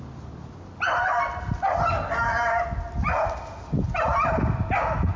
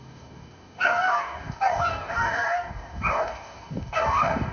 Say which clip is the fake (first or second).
second